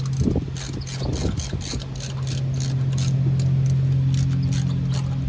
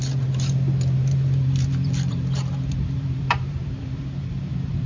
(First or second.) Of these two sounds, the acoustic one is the first